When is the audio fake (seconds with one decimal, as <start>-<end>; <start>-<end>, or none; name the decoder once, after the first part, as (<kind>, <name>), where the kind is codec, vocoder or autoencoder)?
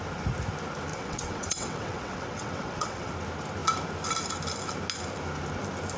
0.9-3.1 (vocoder, WaveNeXt)